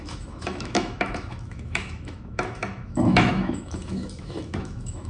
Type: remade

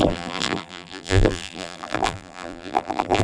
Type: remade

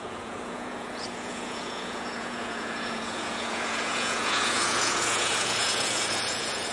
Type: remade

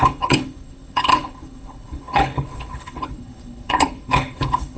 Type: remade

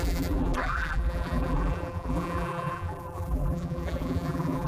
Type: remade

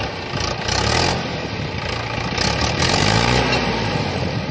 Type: recorded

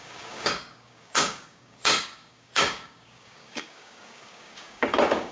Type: remade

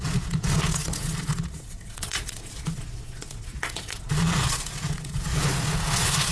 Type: remade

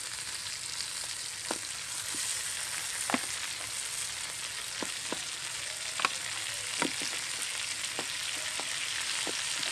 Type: recorded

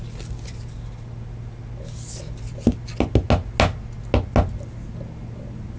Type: recorded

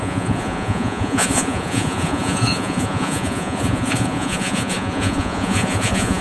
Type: remade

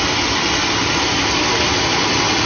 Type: recorded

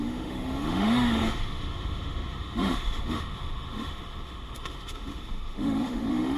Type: remade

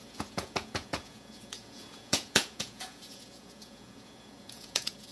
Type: remade